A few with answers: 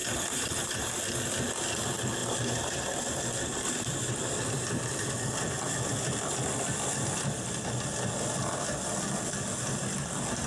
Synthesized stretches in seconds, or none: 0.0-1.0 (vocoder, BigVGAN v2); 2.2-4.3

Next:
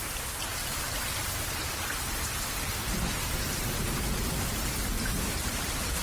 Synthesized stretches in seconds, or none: 0.6-2.5 (vocoder, BigVGAN v2); 4.5-6.0

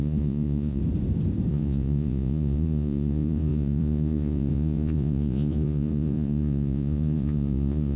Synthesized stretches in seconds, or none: 0.0-0.8 (vocoder, Vocos); 1.5-8.0

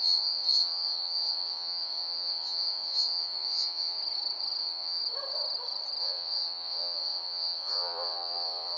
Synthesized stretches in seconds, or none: 0.0-4.0 (vocoder, Vocos); 4.6-5.0; 6.0-8.8

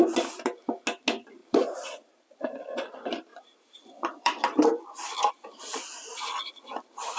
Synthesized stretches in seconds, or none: 1.4-2.1 (vocoder, BigVGAN v2); 3.3-5.3